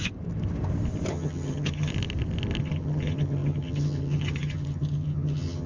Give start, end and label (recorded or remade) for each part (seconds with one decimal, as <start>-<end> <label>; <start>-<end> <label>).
0.0-1.1 recorded; 1.1-1.9 remade; 1.9-2.6 recorded; 2.6-5.7 remade